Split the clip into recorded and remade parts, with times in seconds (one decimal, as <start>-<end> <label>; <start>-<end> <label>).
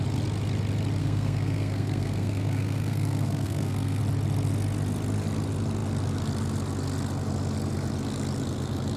0.0-1.0 recorded; 1.0-4.0 remade; 4.0-9.0 recorded